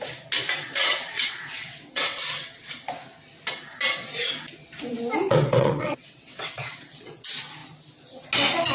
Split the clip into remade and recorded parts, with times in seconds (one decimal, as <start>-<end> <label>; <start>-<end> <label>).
0.0-0.8 recorded; 0.8-2.7 remade; 2.7-5.3 recorded; 5.3-7.1 remade; 7.1-8.7 recorded